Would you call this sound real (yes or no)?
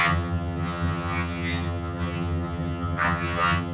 no